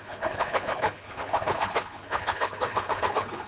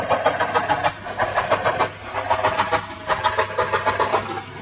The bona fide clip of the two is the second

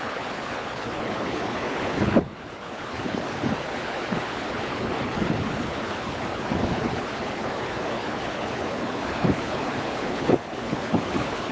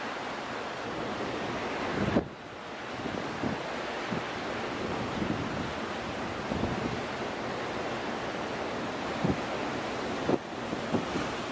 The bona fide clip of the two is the second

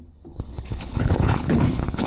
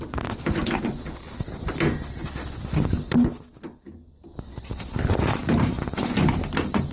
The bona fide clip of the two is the second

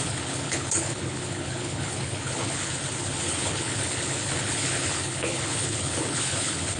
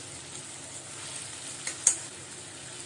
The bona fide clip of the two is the second